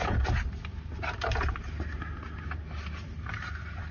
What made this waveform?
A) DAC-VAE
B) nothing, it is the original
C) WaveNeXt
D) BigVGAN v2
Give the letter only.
D